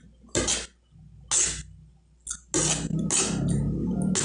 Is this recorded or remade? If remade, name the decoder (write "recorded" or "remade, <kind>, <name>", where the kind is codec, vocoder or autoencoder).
recorded